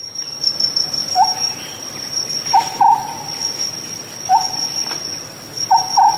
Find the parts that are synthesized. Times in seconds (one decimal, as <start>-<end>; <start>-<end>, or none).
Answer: 0.0-3.0